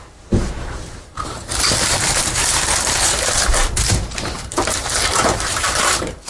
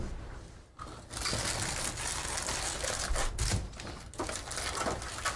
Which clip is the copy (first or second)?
first